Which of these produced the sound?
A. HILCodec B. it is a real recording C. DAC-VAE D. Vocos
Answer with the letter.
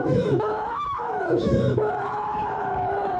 C